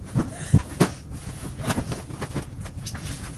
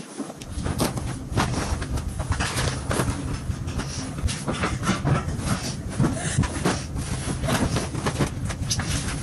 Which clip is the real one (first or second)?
second